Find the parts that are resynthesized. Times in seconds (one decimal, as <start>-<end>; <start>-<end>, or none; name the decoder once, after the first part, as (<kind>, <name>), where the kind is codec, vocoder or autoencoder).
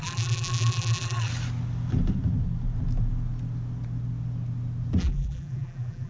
0.0-1.3 (vocoder, BigVGAN v2); 5.0-6.1